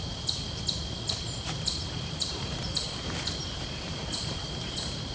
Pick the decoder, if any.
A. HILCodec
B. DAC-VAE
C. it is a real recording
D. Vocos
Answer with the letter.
C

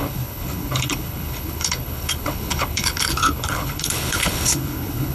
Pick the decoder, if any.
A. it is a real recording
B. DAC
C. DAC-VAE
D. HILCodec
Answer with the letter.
D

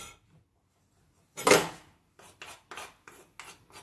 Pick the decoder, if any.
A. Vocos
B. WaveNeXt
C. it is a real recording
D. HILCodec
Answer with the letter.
C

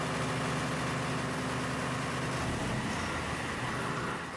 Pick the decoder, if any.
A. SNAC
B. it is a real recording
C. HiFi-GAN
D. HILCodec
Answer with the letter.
B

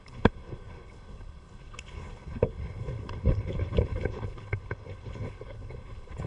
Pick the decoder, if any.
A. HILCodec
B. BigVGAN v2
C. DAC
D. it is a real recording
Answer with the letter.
A